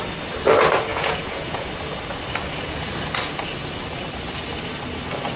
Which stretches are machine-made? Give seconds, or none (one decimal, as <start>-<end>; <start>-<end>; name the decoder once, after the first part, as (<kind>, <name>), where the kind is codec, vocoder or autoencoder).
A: 0.9-1.7 (vocoder, Vocos)